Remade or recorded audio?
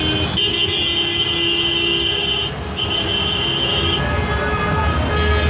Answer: recorded